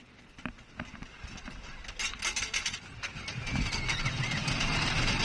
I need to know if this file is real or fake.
real